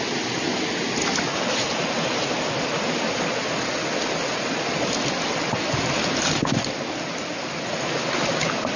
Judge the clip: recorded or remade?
recorded